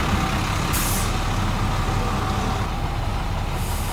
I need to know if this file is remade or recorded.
recorded